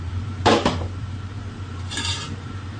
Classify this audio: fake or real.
fake